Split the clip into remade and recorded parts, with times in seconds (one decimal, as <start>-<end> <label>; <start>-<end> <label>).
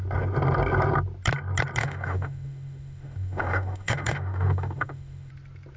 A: 0.0-1.8 recorded; 1.8-5.3 remade; 5.3-5.8 recorded